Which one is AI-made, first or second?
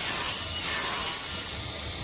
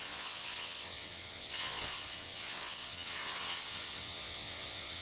second